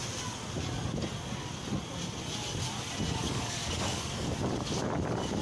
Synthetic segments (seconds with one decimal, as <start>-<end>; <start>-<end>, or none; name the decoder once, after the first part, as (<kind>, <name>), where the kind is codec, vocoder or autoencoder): 3.2-4.3 (codec, DAC)